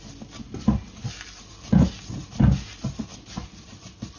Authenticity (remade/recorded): recorded